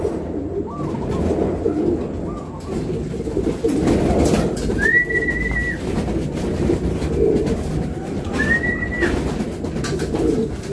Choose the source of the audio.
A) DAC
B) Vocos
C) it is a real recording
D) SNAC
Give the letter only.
C